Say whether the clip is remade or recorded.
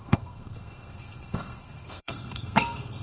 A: remade